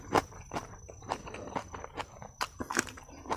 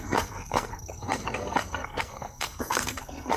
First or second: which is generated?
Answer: second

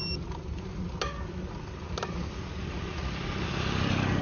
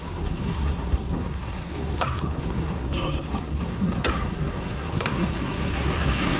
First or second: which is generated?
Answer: second